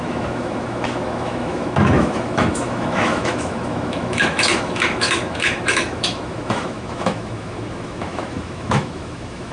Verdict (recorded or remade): remade